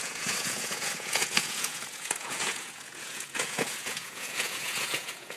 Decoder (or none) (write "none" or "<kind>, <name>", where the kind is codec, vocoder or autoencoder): vocoder, Vocos